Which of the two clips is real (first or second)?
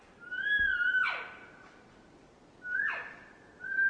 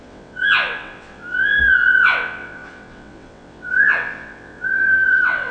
first